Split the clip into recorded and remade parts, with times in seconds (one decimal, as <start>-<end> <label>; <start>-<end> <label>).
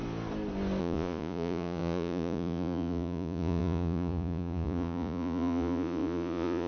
0.0-0.8 recorded; 0.8-6.7 remade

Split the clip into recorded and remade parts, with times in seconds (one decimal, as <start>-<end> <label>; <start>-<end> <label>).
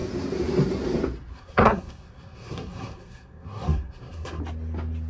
0.0-1.3 recorded; 1.3-4.4 remade; 4.4-5.1 recorded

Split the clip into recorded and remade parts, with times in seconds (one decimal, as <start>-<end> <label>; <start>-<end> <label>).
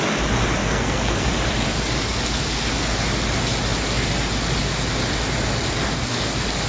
0.0-0.6 recorded; 0.6-1.3 remade; 1.3-6.7 recorded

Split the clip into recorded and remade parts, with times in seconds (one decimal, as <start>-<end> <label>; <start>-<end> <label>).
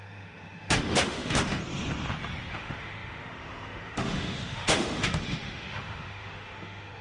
0.0-1.6 remade; 1.6-2.5 recorded; 2.5-7.0 remade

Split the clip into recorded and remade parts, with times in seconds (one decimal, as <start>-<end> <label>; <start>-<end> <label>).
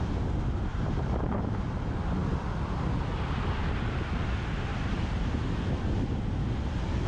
0.0-0.7 recorded; 0.7-1.4 remade; 1.4-4.7 recorded; 4.7-5.3 remade; 5.3-7.1 recorded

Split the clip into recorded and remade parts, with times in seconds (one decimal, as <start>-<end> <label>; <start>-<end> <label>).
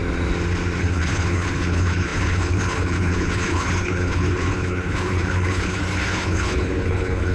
0.0-0.8 recorded; 0.8-7.3 remade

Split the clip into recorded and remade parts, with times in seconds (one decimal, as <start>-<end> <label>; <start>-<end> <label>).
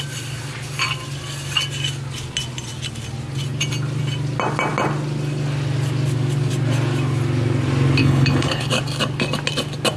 0.0-8.0 recorded; 8.0-8.8 remade; 8.8-10.0 recorded